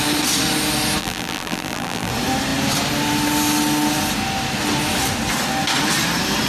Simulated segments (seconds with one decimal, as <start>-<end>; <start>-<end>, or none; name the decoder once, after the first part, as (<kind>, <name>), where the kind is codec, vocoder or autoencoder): 1.0-2.1 (vocoder, BigVGAN v2)

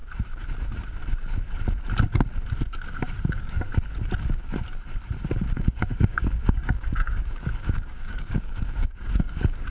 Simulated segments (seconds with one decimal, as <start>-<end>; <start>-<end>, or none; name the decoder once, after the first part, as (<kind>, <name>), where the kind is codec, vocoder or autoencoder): 3.3-3.7 (codec, DAC); 5.5-9.7

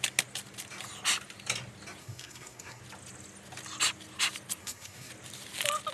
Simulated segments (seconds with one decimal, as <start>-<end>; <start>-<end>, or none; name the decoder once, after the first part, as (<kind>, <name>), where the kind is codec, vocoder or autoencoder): 2.0-2.8 (codec, SNAC); 4.6-5.1

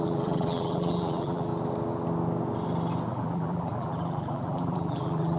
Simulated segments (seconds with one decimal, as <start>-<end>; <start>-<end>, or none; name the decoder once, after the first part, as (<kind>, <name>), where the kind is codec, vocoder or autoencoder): 0.0-1.5 (vocoder, BigVGAN v2); 3.1-5.4

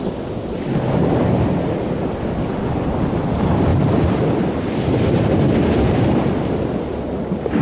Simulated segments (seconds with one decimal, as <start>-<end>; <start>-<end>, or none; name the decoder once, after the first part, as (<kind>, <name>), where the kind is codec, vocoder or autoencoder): none